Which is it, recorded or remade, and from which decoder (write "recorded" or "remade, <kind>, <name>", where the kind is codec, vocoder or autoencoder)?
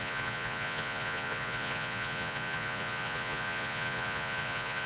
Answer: remade, vocoder, Vocos